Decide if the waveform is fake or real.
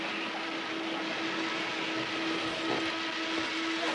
real